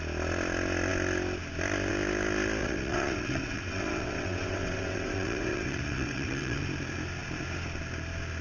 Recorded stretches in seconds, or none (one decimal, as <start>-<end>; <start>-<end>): 0.0-2.6; 6.6-8.4